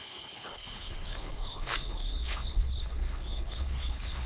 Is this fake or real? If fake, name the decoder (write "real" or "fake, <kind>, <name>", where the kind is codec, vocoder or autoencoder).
fake, codec, HILCodec